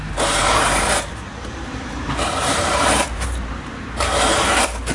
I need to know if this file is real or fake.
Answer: fake